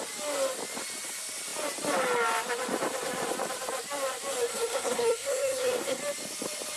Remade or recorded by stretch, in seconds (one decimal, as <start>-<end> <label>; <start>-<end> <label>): 0.0-4.5 recorded; 4.5-6.0 remade; 6.0-6.8 recorded